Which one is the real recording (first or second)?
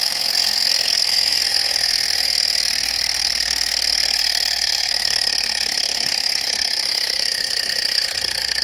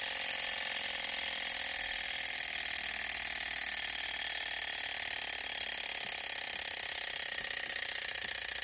second